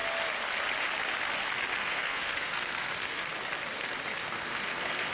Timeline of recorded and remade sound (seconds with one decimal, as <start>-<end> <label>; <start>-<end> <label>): 0.0-1.8 recorded; 1.8-3.3 remade; 3.3-4.2 recorded; 4.2-5.1 remade